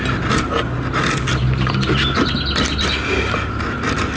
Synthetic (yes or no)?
no